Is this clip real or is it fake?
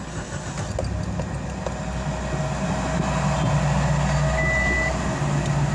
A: real